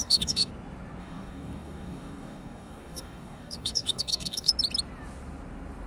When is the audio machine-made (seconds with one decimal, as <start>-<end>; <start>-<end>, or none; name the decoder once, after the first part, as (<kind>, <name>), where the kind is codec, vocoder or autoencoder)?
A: 0.0-0.5 (codec, DAC); 1.0-4.5